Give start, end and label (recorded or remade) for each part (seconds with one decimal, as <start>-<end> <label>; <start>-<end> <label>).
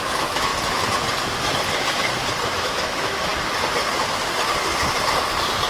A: 0.0-0.5 remade; 0.5-2.5 recorded; 2.5-3.3 remade; 3.3-5.7 recorded